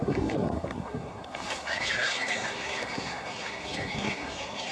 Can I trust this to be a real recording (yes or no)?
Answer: no